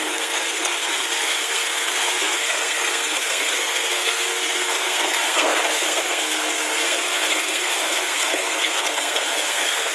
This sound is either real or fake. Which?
fake